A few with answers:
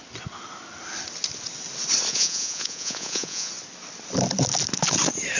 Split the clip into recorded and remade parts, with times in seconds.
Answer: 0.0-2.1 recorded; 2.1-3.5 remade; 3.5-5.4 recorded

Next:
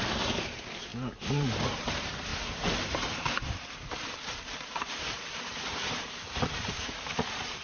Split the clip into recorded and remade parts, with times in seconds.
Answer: 0.0-7.6 remade

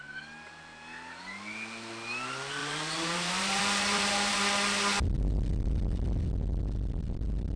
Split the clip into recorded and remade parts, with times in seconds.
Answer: 0.0-2.6 recorded; 2.6-4.4 remade; 4.4-7.6 recorded

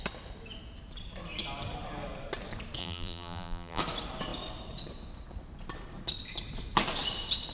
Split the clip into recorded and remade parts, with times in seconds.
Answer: 0.0-2.8 recorded; 2.8-3.8 remade; 3.8-7.5 recorded

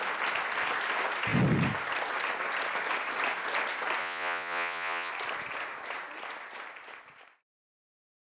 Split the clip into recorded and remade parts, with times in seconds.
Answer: 0.0-4.0 recorded; 4.0-5.1 remade; 5.1-8.2 recorded

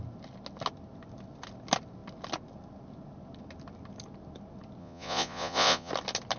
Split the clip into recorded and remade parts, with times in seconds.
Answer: 0.0-4.8 recorded; 4.8-5.9 remade; 5.9-6.4 recorded

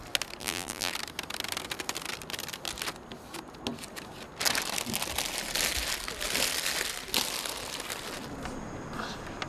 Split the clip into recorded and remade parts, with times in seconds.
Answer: 0.0-0.4 recorded; 0.4-0.9 remade; 0.9-9.5 recorded